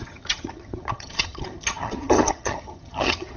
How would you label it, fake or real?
fake